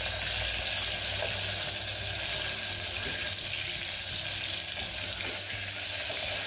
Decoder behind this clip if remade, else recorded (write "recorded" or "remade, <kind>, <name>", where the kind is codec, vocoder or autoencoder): recorded